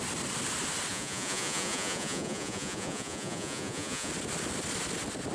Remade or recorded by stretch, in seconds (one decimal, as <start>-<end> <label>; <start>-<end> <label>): 0.0-0.9 recorded; 0.9-4.1 remade; 4.1-5.3 recorded